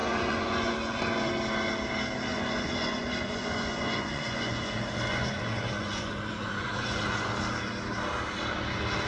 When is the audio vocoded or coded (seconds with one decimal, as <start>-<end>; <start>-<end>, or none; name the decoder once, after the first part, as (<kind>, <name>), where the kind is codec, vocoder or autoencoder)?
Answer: 0.0-1.3 (vocoder, Vocos); 2.3-7.3